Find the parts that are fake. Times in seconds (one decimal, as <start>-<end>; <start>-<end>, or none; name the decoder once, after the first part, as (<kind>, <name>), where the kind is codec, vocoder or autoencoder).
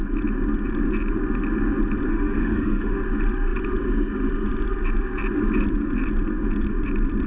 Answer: 2.1-3.0 (autoencoder, DAC-VAE)